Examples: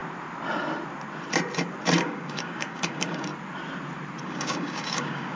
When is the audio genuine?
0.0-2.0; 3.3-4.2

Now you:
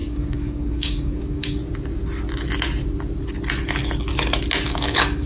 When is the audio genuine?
1.6-4.7

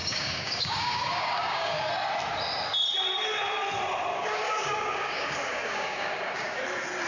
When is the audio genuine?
1.9-4.1; 6.6-7.1

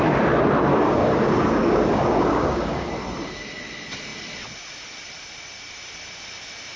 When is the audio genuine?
0.0-0.7; 2.9-6.8

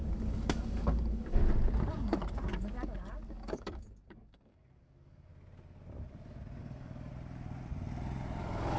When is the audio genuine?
1.4-1.9; 5.3-6.6; 7.1-8.4